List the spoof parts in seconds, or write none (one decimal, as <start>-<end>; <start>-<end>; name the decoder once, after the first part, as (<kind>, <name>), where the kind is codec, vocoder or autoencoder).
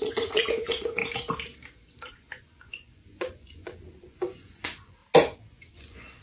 0.0-1.0 (vocoder, Vocos); 2.1-5.0; 5.7-6.2